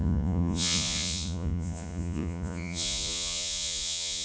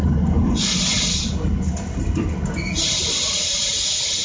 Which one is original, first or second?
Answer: second